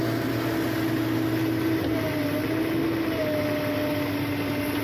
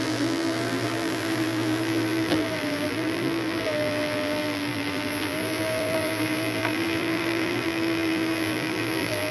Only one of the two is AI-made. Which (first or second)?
second